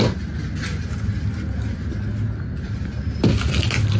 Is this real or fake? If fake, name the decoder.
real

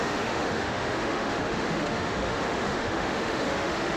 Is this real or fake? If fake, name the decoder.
fake, autoencoder, DAC-VAE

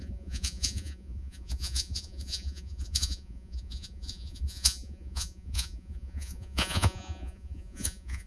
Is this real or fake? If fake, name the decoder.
fake, vocoder, Vocos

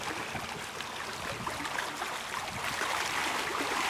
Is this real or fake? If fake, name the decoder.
real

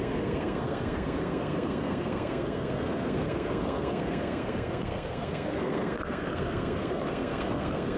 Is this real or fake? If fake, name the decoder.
fake, codec, SNAC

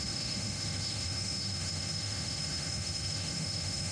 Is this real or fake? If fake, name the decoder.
fake, autoencoder, DAC-VAE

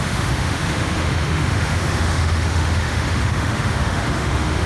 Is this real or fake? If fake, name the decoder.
fake, autoencoder, DAC-VAE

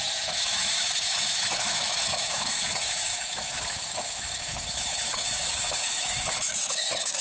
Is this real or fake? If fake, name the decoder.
fake, autoencoder, DAC-VAE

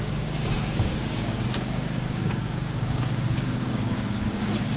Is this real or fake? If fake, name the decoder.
fake, codec, DAC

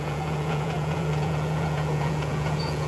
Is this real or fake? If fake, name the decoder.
fake, vocoder, Vocos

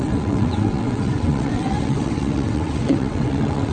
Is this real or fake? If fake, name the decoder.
fake, vocoder, WaveNeXt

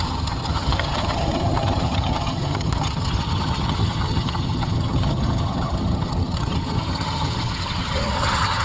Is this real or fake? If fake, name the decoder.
fake, vocoder, HiFi-GAN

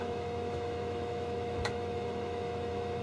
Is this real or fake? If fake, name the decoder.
fake, autoencoder, DAC-VAE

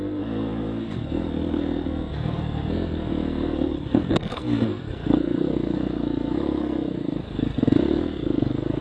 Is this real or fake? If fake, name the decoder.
fake, codec, SNAC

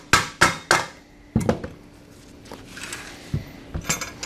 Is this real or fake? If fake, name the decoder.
real